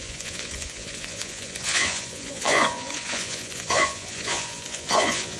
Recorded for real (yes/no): no